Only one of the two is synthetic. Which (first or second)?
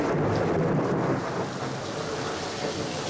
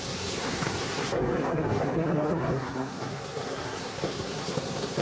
second